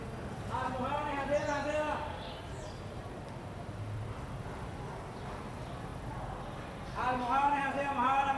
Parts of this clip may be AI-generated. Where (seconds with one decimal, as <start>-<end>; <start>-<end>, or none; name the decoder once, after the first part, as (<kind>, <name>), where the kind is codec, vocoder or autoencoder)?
none